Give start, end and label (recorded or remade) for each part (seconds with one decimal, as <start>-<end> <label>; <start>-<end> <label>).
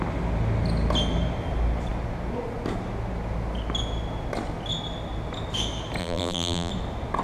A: 0.0-6.0 recorded; 6.0-6.7 remade; 6.7-7.2 recorded